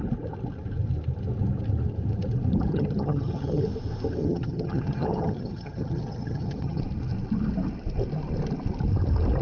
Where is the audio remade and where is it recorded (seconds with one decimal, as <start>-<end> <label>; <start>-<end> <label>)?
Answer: 0.0-2.7 recorded; 2.7-3.6 remade; 3.6-4.2 recorded; 4.2-6.8 remade; 6.8-9.4 recorded